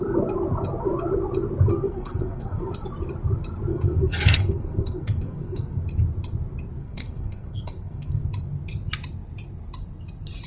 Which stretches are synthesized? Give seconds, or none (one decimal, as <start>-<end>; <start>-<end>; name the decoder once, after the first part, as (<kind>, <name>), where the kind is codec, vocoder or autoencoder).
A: 1.7-2.7 (codec, SNAC); 3.7-5.8; 6.8-8.2